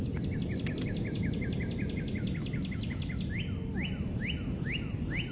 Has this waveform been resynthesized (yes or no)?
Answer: no